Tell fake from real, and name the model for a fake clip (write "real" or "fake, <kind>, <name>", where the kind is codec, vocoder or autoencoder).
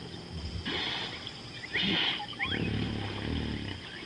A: real